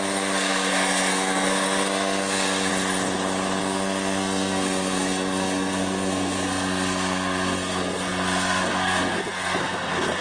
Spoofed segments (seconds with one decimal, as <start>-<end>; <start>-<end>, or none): 0.0-2.7; 3.6-10.2